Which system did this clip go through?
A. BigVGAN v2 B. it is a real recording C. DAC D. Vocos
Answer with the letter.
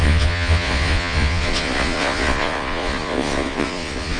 D